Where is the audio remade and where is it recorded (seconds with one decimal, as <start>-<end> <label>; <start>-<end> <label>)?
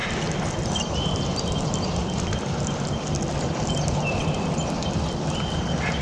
0.0-0.8 recorded; 0.8-6.0 remade